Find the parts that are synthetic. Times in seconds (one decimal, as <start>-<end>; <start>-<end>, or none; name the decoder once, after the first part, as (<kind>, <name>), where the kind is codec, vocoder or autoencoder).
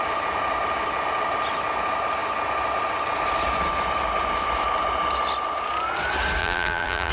6.4-7.1 (vocoder, BigVGAN v2)